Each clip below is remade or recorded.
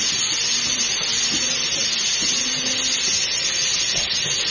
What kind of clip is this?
recorded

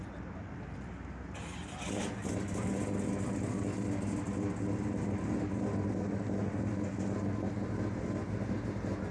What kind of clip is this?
recorded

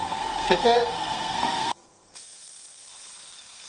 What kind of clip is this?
remade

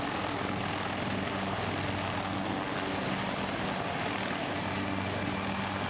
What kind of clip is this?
recorded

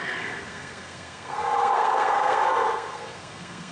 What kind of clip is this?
remade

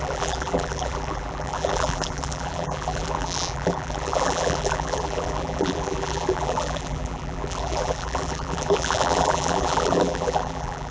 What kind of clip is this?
remade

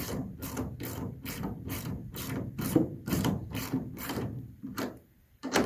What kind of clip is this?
remade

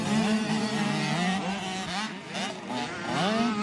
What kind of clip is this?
recorded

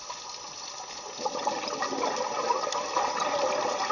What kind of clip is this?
recorded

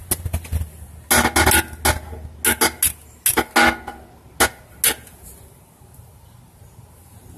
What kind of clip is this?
recorded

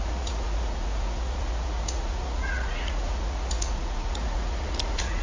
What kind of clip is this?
remade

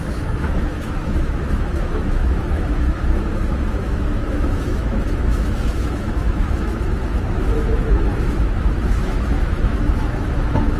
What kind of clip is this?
remade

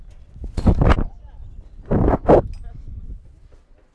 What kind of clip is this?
recorded